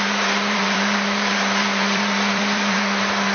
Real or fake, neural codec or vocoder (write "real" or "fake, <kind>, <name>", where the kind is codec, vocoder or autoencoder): fake, vocoder, BigVGAN v2